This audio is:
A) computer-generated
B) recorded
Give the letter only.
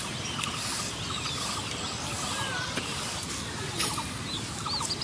B